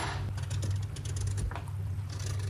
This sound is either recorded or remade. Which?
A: recorded